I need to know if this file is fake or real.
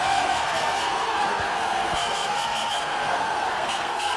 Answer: fake